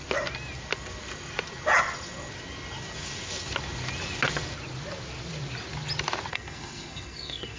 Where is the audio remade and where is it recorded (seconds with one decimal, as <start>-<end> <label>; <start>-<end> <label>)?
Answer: 0.0-6.3 recorded; 6.3-7.6 remade